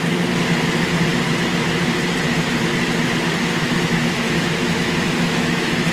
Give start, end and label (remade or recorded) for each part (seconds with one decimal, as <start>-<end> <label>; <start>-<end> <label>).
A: 0.0-3.5 recorded; 3.5-5.9 remade